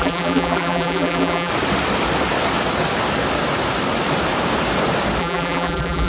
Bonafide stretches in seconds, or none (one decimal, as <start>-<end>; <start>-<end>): 1.5-5.2